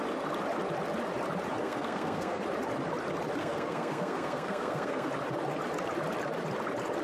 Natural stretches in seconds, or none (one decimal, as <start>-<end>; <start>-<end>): 0.0-1.6; 2.4-3.4; 5.1-7.0